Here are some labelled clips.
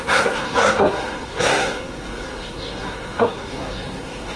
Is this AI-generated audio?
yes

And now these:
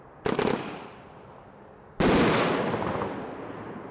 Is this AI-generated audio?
no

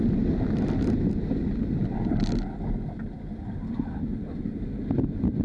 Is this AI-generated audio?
no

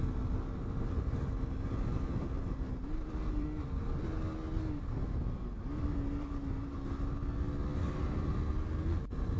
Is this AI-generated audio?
no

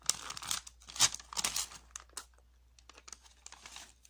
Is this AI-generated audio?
no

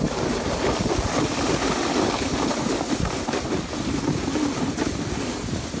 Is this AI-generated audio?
no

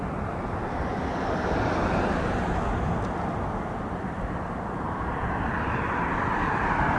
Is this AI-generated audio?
no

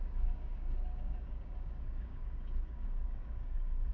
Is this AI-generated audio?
yes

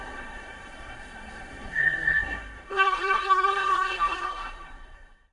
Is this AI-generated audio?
yes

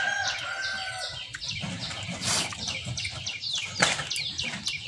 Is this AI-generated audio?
no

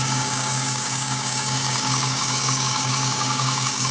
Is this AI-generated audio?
yes